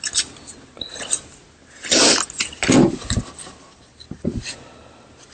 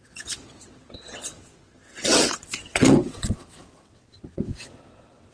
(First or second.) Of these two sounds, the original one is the first